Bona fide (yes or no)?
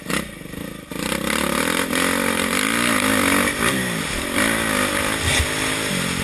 yes